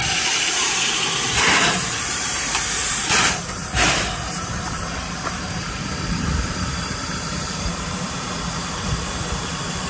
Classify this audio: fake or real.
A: fake